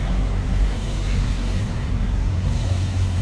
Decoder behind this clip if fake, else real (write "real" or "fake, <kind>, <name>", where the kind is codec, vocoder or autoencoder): fake, codec, SNAC